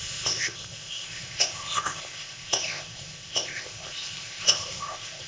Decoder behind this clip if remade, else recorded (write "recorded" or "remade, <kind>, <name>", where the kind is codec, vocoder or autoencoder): remade, codec, ZipCodec